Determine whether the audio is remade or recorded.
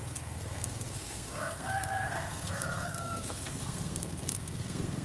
remade